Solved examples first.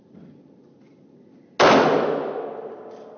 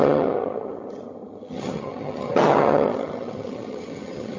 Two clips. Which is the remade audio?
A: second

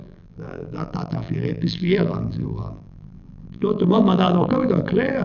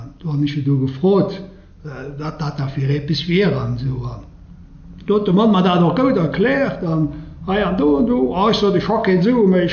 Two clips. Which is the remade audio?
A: first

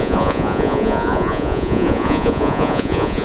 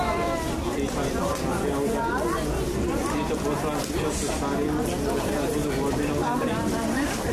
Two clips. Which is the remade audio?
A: first